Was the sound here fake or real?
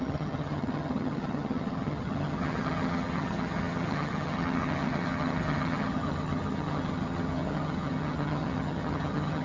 fake